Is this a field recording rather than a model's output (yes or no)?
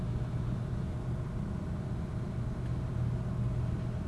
yes